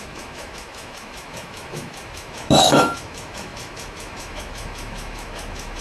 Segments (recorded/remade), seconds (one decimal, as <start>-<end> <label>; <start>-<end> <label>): 0.0-5.8 remade